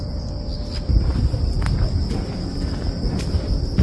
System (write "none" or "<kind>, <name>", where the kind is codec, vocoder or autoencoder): none